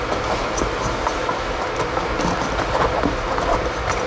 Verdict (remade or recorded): recorded